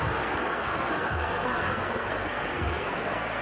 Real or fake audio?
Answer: fake